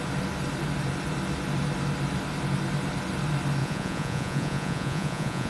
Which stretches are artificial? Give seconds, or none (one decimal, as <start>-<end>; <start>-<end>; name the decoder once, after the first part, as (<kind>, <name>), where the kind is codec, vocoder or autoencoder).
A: 3.6-5.5 (vocoder, Vocos)